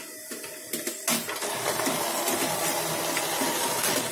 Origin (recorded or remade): recorded